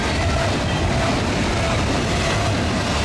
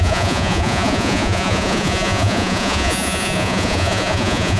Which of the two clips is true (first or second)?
first